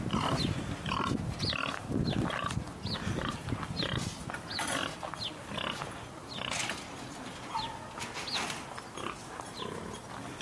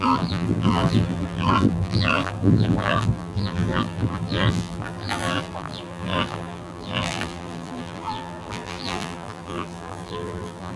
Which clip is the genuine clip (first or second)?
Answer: first